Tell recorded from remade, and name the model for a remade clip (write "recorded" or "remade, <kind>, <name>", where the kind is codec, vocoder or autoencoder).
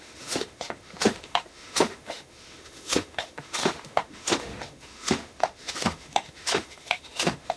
remade, autoencoder, DAC-VAE